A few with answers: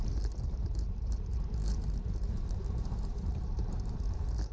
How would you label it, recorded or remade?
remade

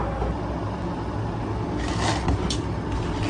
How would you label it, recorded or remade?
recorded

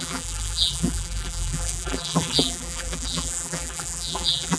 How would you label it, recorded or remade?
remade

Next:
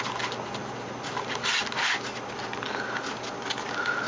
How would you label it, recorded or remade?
recorded